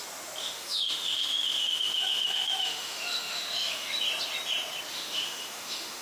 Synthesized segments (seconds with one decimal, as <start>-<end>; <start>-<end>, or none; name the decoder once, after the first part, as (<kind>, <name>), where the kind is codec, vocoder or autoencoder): 0.4-4.0 (autoencoder, DAC-VAE); 4.9-6.0

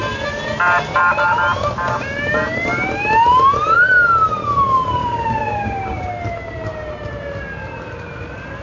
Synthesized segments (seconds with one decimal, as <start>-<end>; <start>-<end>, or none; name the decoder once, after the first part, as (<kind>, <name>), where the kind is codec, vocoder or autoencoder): 5.0-6.1 (codec, DAC)

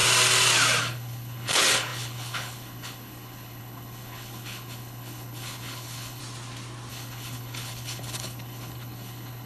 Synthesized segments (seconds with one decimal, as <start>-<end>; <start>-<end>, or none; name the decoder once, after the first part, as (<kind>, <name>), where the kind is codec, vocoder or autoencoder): 0.8-6.2 (codec, HILCodec); 6.9-9.5

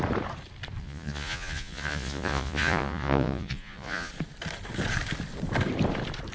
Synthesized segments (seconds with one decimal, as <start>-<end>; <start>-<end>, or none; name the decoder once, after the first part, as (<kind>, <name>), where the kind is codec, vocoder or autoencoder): 0.8-4.1 (vocoder, Vocos)

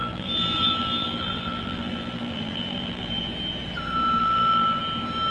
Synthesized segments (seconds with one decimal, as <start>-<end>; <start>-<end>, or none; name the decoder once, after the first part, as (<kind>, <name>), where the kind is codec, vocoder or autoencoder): 0.0-3.2 (vocoder, BigVGAN v2); 4.2-4.8